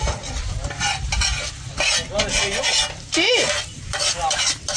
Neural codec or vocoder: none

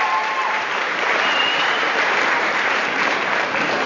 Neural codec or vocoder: vocoder, BigVGAN v2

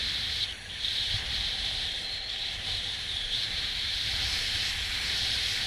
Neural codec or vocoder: vocoder, BigVGAN v2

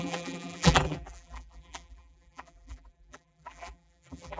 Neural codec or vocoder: vocoder, BigVGAN v2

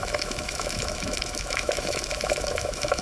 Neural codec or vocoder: autoencoder, DAC-VAE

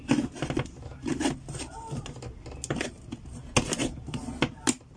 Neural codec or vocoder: none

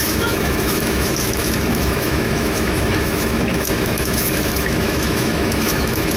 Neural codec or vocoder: autoencoder, DAC-VAE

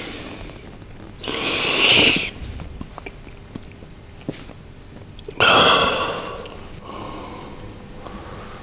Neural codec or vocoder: none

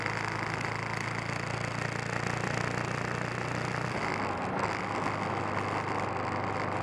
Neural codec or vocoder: none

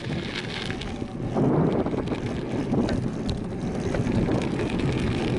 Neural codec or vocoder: none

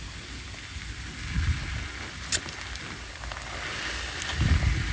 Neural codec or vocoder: none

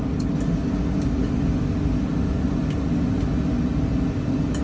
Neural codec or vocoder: none